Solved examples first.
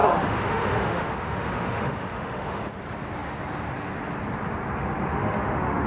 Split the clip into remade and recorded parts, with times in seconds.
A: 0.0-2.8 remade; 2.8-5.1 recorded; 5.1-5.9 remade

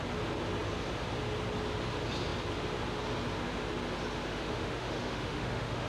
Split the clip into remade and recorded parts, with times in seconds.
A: 0.0-4.3 recorded; 4.3-5.9 remade

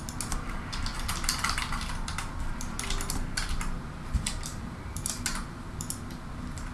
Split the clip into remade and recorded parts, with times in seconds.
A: 0.0-4.5 recorded; 4.5-5.9 remade; 5.9-6.7 recorded

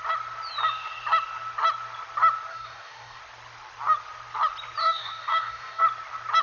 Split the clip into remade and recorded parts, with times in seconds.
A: 0.0-2.5 recorded; 2.5-3.2 remade; 3.2-4.8 recorded; 4.8-5.8 remade; 5.8-6.4 recorded

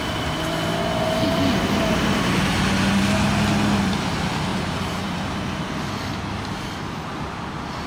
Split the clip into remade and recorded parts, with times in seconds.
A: 0.0-4.5 recorded; 4.5-5.7 remade; 5.7-7.9 recorded

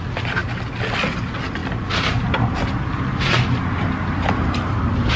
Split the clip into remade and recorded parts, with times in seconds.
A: 0.0-5.2 recorded